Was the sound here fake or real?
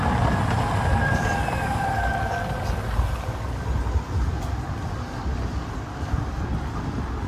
real